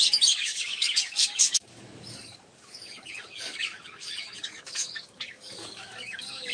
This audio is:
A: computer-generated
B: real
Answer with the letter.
A